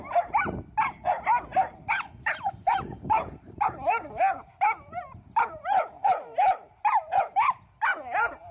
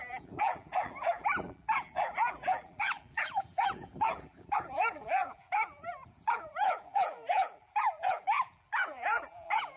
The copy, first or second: second